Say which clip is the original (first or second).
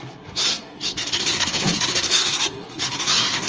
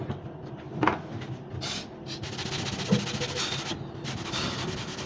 second